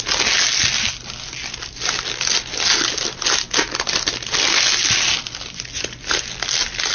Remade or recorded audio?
recorded